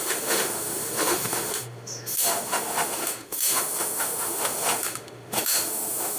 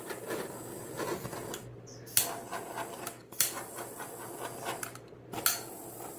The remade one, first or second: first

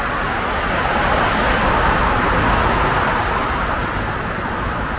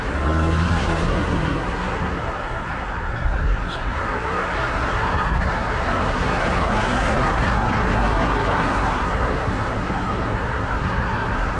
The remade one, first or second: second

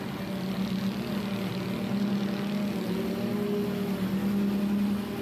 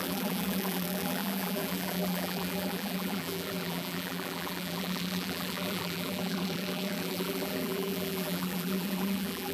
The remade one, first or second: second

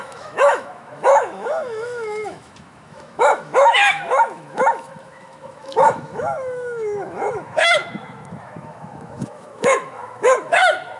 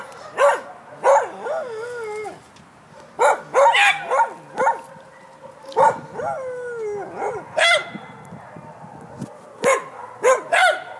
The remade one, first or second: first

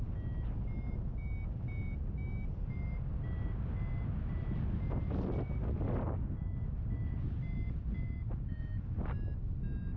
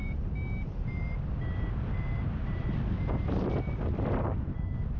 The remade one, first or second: second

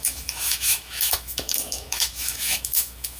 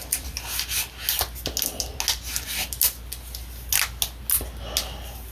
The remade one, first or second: first